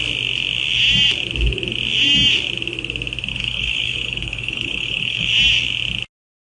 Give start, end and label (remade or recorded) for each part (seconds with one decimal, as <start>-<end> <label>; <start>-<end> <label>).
0.0-3.3 recorded; 3.3-5.3 remade; 5.3-6.4 recorded